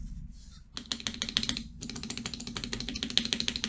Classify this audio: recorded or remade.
recorded